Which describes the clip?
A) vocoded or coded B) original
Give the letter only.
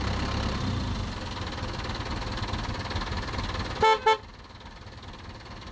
B